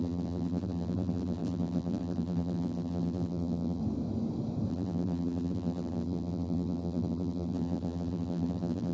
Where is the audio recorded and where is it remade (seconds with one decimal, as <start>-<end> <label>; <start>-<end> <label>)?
0.0-3.8 remade; 3.8-4.7 recorded; 4.7-8.9 remade